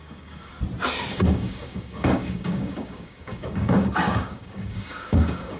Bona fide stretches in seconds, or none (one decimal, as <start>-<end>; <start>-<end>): 0.5-1.1